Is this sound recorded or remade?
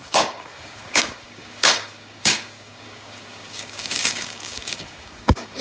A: remade